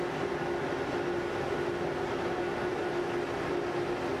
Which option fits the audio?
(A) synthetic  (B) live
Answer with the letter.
B